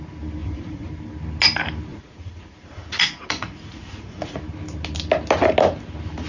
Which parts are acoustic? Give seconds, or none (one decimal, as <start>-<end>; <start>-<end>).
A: 0.0-0.4; 0.9-1.9; 4.4-6.3